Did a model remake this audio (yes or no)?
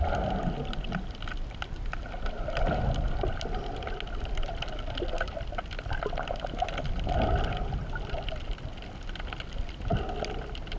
no